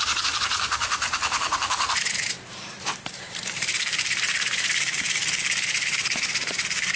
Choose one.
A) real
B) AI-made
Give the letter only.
B